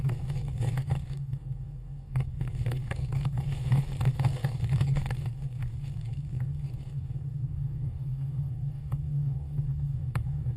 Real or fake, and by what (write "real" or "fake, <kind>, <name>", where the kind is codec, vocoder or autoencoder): fake, codec, DAC